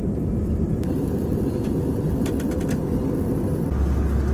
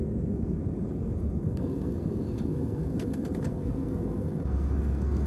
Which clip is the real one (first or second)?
first